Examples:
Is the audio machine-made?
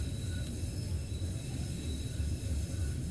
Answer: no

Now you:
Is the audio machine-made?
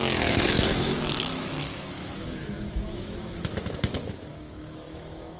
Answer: yes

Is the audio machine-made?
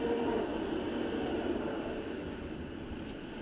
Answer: no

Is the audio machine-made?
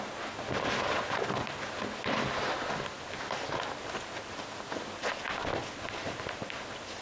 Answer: no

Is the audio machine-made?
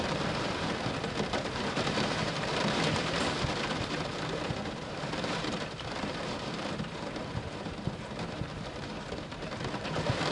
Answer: yes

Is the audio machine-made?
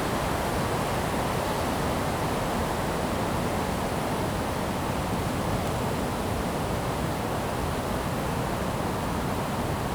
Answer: no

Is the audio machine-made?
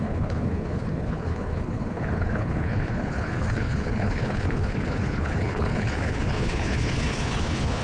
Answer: yes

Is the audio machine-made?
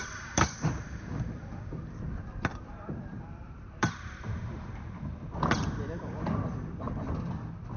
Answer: yes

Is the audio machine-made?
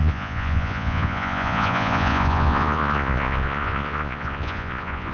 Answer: yes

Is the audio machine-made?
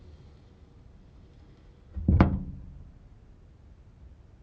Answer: no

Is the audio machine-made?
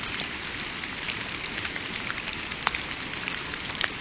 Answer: yes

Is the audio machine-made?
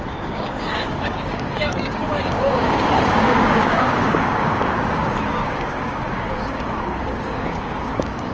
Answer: yes